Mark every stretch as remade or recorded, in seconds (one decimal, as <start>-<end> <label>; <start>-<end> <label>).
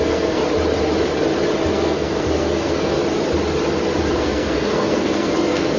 0.0-0.4 remade; 0.4-1.7 recorded; 1.7-3.0 remade; 3.0-4.1 recorded; 4.1-5.8 remade